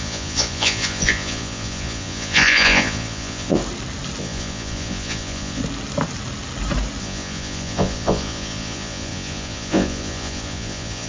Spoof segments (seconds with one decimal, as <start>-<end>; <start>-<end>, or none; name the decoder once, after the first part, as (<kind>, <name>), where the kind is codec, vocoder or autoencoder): 0.0-3.6 (vocoder, Vocos); 4.2-5.6; 7.0-11.1

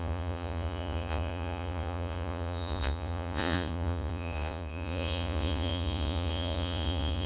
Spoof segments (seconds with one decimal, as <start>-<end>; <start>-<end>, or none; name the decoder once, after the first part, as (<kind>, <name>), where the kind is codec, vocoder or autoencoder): 0.0-7.3 (vocoder, Vocos)

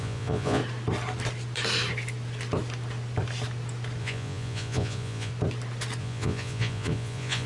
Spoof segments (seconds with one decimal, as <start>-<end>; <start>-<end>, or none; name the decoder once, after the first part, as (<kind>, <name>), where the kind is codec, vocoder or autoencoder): 0.0-0.6 (vocoder, Vocos); 4.0-5.3; 6.0-7.5

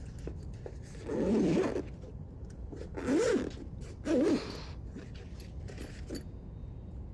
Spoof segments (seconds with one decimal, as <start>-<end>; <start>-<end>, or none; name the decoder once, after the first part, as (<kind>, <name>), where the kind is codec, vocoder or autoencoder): none

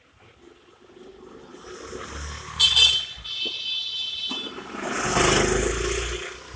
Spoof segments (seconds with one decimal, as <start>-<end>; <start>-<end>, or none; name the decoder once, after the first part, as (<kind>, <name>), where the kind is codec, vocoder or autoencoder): none

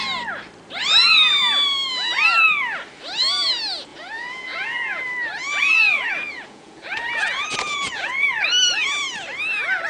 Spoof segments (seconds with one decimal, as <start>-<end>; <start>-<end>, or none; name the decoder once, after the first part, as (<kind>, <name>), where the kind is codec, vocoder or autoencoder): 3.9-5.0 (vocoder, Vocos); 5.5-8.5